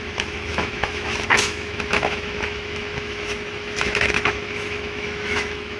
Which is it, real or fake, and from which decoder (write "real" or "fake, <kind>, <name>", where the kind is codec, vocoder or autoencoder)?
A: fake, autoencoder, DAC-VAE